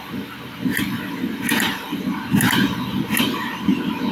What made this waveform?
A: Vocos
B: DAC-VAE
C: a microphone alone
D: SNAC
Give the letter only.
C